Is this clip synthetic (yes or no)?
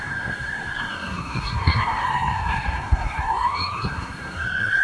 yes